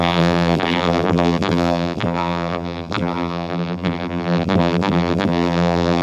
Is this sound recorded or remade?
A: remade